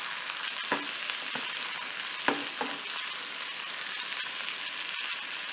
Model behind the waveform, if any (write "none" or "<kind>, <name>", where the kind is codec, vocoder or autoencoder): none